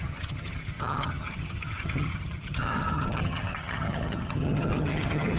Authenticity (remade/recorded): remade